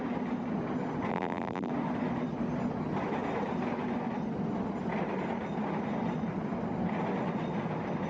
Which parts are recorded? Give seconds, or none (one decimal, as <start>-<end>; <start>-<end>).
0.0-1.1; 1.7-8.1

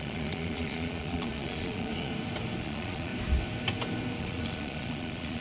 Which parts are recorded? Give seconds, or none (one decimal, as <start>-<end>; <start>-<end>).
2.1-2.6; 3.1-4.2

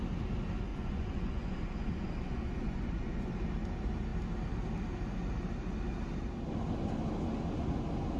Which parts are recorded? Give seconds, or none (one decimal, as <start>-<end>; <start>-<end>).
0.0-0.7; 3.3-8.2

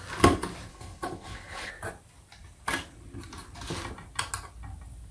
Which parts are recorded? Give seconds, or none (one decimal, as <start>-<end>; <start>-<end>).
0.0-0.7; 1.7-5.1